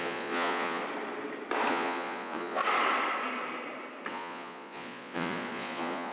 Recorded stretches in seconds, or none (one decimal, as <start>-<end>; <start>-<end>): 0.8-1.7; 2.6-4.1